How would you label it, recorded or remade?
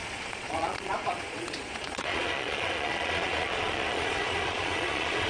remade